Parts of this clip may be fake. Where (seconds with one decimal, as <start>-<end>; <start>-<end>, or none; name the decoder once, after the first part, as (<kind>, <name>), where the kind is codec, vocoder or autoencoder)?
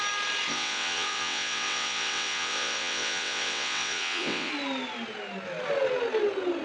0.5-4.5 (vocoder, WaveNeXt)